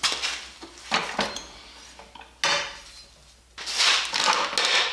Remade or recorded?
recorded